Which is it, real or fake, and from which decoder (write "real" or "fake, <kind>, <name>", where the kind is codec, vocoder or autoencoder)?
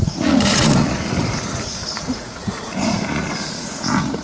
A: fake, vocoder, Vocos